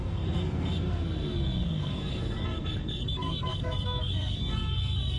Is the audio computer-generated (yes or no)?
yes